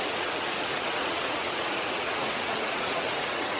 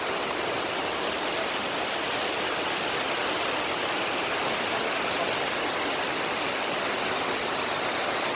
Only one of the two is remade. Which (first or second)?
first